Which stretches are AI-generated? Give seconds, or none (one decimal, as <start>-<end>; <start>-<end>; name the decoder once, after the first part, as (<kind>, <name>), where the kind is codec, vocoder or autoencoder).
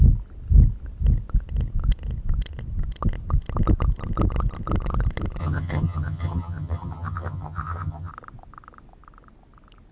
5.4-8.1 (vocoder, HiFi-GAN)